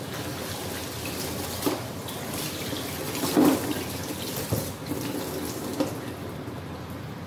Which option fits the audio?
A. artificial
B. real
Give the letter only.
B